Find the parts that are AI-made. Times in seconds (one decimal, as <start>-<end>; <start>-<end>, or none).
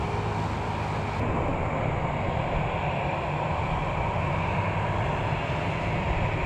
none